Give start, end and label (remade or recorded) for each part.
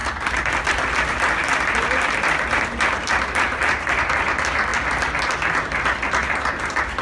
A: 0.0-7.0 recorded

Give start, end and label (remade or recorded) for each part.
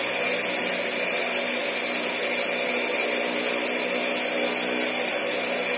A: 0.0-5.8 recorded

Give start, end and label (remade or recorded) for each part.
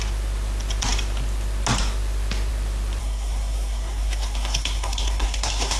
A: 0.0-3.0 recorded; 3.0-5.8 remade